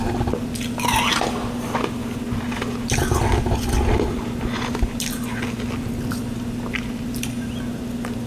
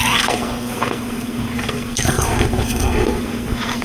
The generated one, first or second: second